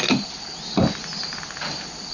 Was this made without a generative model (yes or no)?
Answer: yes